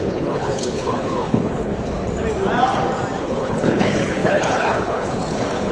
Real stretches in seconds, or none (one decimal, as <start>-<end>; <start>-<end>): 1.7-3.2